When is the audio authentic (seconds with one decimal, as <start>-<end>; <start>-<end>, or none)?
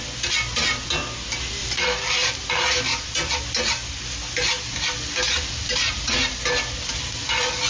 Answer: 0.0-7.7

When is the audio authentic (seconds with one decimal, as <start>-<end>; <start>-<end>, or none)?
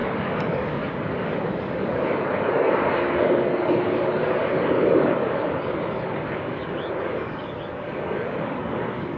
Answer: none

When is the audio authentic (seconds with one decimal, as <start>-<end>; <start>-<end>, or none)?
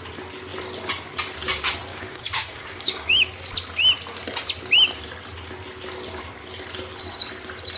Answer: 0.0-1.9; 3.3-7.8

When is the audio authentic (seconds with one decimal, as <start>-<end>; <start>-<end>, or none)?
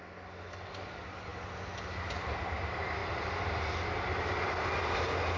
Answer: 0.0-5.4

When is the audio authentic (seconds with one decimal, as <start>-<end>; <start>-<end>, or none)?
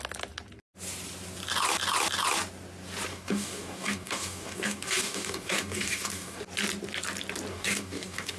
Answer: 0.0-3.1; 6.4-7.5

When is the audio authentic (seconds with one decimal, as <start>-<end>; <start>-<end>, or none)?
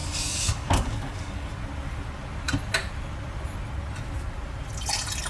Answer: 1.5-5.3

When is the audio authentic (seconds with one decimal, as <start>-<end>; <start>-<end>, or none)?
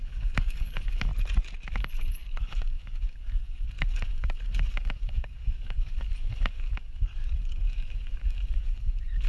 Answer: 1.1-1.7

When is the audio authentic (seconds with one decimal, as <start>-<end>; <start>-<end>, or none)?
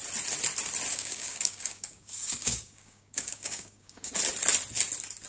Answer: 0.0-0.9; 4.1-5.3